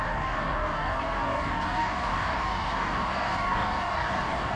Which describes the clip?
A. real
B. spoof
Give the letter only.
B